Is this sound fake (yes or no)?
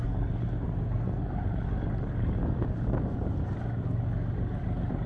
no